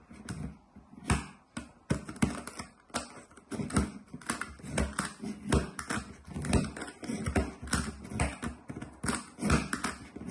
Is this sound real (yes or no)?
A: yes